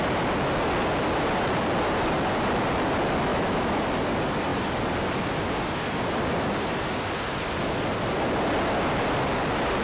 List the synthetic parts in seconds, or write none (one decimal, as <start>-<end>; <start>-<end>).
3.3-3.8